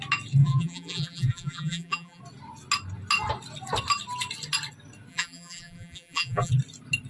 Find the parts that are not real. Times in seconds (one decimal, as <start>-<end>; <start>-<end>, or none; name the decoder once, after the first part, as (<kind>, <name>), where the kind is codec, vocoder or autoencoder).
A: 0.4-2.2 (vocoder, BigVGAN v2); 5.1-6.5